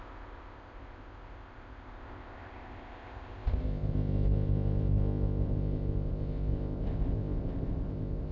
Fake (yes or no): yes